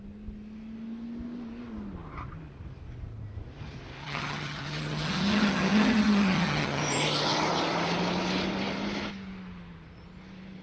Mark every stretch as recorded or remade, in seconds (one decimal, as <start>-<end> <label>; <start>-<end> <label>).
0.0-4.0 recorded; 4.0-6.8 remade; 6.8-10.6 recorded